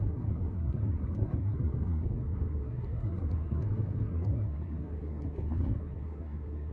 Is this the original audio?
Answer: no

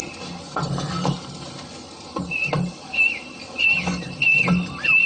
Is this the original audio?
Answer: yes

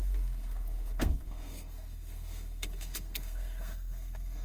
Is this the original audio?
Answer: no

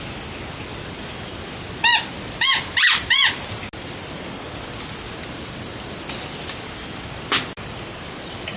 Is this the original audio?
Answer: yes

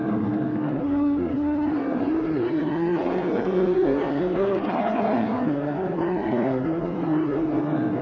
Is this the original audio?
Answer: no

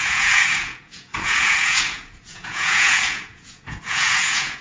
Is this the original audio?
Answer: no